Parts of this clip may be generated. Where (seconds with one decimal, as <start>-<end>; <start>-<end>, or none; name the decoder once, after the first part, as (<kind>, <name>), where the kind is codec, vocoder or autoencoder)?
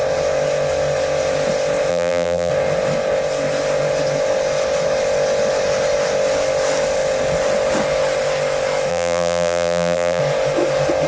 1.9-2.5 (vocoder, BigVGAN v2); 8.9-10.2